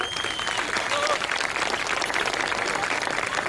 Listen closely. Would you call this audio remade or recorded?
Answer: recorded